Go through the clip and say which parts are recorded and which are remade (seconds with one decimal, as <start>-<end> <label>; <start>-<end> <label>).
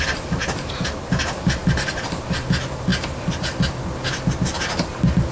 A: 0.0-5.3 recorded